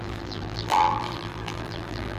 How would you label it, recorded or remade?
remade